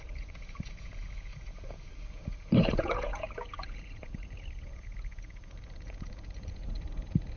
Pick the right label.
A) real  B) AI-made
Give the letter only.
B